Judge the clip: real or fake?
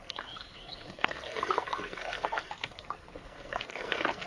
fake